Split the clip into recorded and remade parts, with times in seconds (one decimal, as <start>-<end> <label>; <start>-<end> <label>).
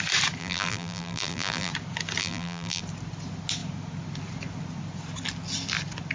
0.0-0.4 recorded; 0.4-1.7 remade; 1.7-2.2 recorded; 2.2-2.8 remade; 2.8-6.1 recorded